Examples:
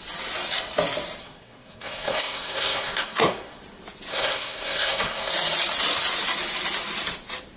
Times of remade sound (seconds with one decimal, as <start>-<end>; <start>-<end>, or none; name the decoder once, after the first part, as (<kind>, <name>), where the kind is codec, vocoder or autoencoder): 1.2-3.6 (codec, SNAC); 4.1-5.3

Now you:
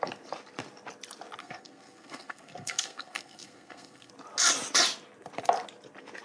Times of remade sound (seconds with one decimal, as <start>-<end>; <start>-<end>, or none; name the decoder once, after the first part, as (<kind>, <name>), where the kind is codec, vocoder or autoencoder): 1.4-4.1 (codec, SNAC)

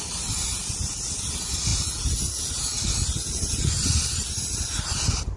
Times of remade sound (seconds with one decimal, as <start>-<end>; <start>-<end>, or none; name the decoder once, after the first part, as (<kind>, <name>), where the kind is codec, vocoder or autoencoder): none

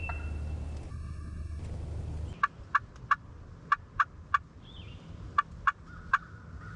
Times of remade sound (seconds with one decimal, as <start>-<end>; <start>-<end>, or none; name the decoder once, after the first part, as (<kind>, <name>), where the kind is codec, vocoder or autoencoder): 0.9-1.6 (codec, SNAC)

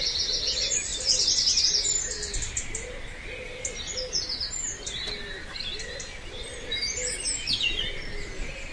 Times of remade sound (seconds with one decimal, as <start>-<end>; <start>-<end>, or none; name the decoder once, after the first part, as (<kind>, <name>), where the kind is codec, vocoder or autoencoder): none

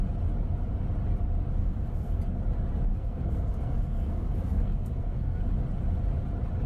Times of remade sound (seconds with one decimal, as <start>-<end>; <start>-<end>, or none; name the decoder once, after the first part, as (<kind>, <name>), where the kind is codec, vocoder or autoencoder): 1.6-2.2 (codec, SNAC); 2.9-5.4